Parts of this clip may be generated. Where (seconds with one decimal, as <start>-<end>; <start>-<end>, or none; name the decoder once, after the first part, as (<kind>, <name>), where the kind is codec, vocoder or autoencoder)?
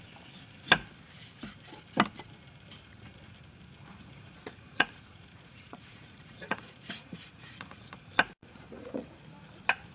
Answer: 3.9-8.0 (vocoder, Vocos); 8.4-9.2